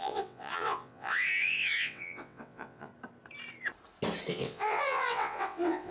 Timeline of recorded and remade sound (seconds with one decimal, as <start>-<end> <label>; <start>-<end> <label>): 0.0-2.9 remade; 2.9-4.3 recorded; 4.3-5.9 remade